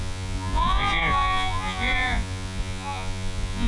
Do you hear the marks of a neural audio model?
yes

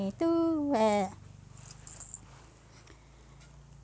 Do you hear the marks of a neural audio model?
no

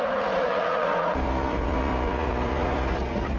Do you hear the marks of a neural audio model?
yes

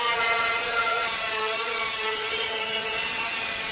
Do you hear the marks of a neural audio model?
yes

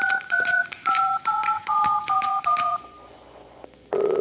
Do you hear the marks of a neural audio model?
yes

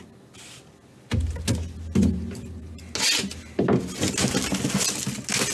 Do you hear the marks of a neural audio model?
no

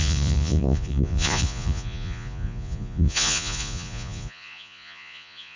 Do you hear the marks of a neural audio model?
yes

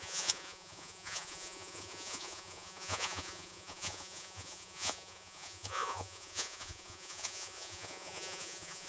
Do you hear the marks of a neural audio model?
yes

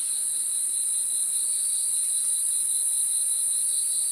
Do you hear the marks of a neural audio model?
no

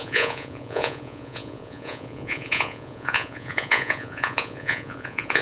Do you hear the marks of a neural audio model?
yes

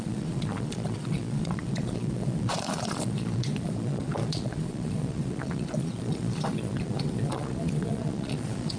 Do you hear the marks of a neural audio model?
yes